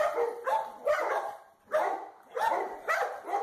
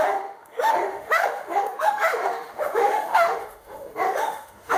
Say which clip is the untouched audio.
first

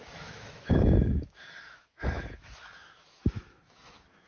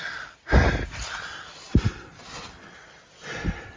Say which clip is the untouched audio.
second